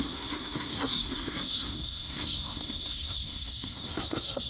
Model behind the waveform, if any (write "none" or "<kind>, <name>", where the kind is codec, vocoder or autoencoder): codec, SNAC